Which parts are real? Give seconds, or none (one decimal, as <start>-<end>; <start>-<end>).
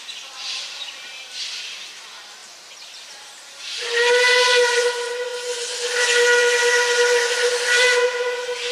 0.0-0.4; 1.8-2.4; 4.5-8.7